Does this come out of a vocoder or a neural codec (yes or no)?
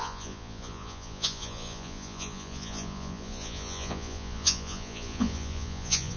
yes